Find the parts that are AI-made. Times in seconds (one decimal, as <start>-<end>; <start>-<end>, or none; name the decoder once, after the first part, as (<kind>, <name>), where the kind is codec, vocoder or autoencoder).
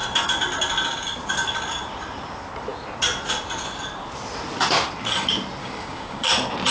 5.6-6.3 (codec, DAC)